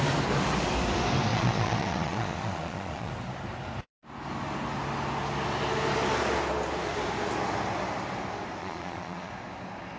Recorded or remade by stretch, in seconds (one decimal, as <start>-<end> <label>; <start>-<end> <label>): 0.0-1.3 recorded; 1.3-3.1 remade; 3.1-8.6 recorded; 8.6-9.3 remade; 9.3-10.0 recorded